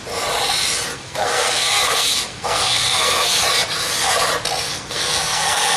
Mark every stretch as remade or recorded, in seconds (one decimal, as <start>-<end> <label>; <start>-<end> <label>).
0.0-0.9 recorded; 0.9-3.4 remade; 3.4-4.7 recorded; 4.7-5.8 remade